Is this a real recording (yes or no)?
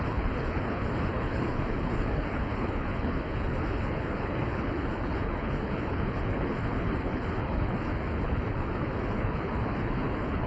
no